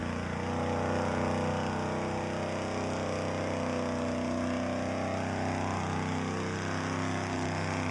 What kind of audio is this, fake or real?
real